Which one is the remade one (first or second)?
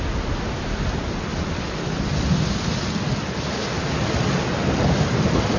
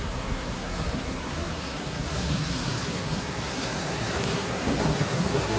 second